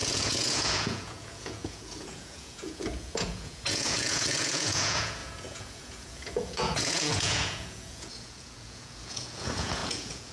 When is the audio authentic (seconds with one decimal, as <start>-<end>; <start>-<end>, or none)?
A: none